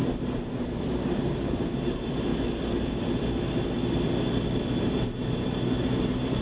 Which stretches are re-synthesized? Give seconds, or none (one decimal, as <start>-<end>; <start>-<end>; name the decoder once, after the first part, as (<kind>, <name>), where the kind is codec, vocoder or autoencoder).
0.0-2.3 (vocoder, BigVGAN v2); 4.6-6.4